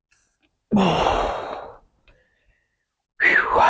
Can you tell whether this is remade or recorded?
recorded